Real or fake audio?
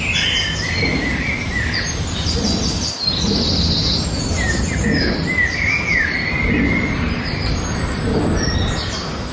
real